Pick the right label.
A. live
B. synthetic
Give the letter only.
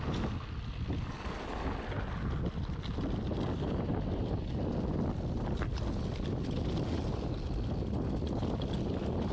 A